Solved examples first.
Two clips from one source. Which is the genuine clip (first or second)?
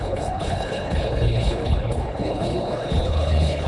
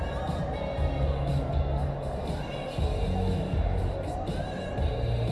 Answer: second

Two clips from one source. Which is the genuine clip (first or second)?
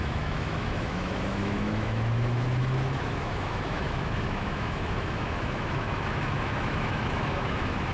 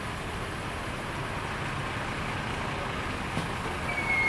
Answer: second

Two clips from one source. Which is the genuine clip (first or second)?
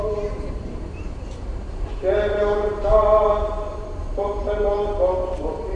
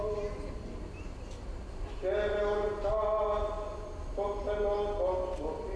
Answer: second